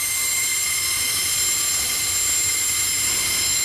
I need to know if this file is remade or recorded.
recorded